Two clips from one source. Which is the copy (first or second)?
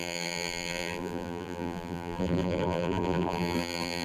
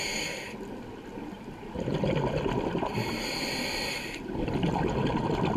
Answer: first